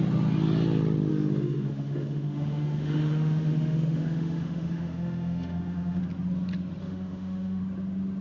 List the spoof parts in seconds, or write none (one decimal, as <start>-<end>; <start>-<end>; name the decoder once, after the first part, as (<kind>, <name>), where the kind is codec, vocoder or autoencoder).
1.1-6.0 (autoencoder, DAC-VAE); 6.8-7.6